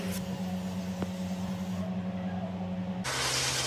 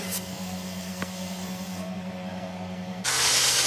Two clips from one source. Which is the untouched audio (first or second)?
first